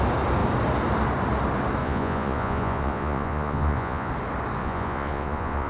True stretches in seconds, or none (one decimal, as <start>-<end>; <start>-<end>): 0.0-1.8; 4.1-4.6